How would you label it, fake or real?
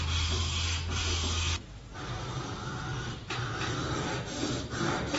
real